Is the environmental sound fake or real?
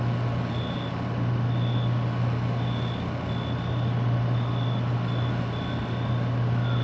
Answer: real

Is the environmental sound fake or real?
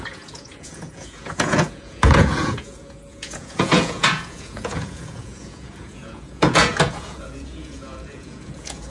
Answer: fake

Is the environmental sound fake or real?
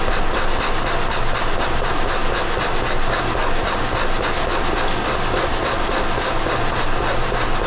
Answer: real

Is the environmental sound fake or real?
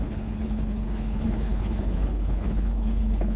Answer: fake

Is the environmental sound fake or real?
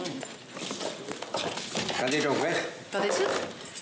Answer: real